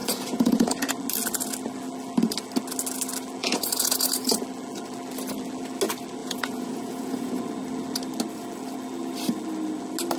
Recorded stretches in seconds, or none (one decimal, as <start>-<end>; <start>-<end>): 0.9-3.4; 4.4-6.2; 7.4-10.2